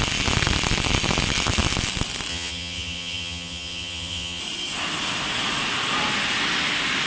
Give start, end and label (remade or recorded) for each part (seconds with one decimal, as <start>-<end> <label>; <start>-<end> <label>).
0.0-2.3 recorded; 2.3-4.4 remade; 4.4-7.1 recorded